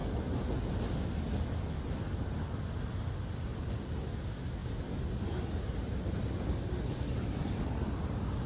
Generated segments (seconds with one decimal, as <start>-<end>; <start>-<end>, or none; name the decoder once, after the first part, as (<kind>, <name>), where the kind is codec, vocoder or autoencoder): none